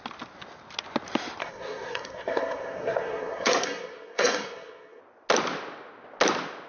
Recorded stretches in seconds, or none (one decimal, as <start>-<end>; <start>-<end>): 0.0-1.4; 5.0-6.7